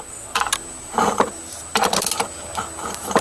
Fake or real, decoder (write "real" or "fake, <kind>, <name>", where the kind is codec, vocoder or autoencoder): fake, vocoder, BigVGAN v2